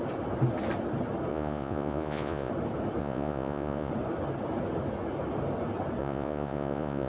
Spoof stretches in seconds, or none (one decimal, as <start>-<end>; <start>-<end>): 1.3-2.5; 3.0-3.9; 6.0-7.1